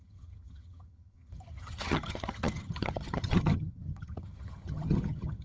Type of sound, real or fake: fake